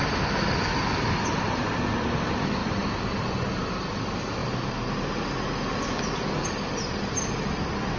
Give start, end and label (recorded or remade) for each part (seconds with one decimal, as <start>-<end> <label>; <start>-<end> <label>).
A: 0.0-8.0 recorded